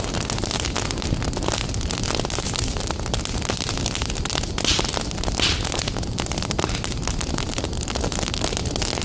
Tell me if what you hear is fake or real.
real